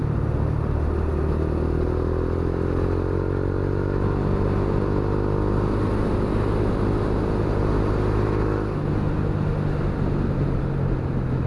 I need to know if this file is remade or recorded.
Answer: recorded